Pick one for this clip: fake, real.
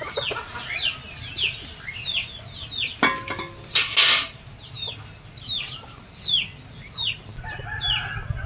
real